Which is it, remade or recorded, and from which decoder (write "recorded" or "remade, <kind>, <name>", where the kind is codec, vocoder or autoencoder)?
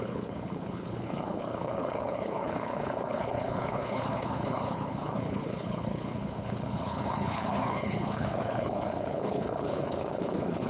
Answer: remade, codec, HILCodec